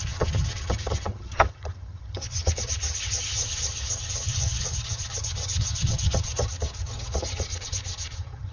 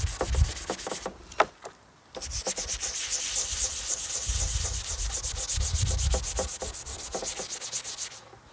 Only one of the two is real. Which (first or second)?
second